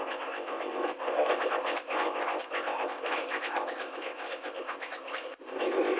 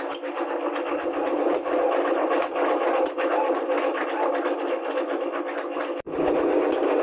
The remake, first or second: first